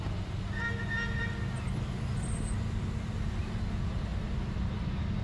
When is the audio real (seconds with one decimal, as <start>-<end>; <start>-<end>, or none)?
0.0-4.1; 4.8-5.2